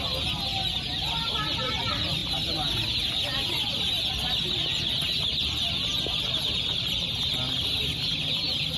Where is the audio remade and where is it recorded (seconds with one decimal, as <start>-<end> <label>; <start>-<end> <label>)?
0.0-8.8 recorded